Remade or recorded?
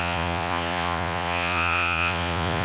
remade